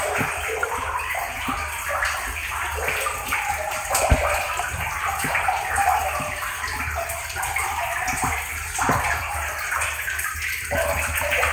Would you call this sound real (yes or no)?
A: yes